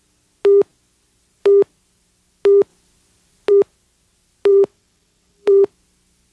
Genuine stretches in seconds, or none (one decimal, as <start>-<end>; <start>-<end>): 0.0-4.5; 5.7-6.3